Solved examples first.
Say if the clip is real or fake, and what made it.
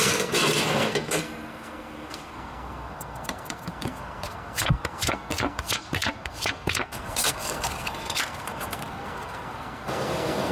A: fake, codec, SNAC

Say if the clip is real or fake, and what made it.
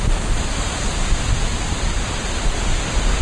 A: real